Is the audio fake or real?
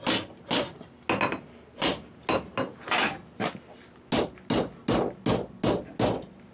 real